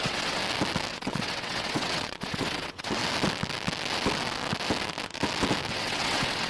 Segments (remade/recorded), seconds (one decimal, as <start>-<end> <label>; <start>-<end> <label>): 0.0-0.4 remade; 0.4-0.9 recorded; 0.9-3.0 remade; 3.0-5.7 recorded; 5.7-6.5 remade